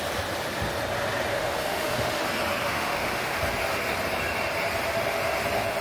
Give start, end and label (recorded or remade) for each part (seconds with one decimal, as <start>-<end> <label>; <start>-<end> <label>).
0.0-1.3 recorded; 1.3-2.2 remade; 2.2-2.6 recorded; 2.6-3.4 remade; 3.4-5.8 recorded